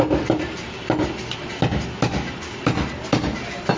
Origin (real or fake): real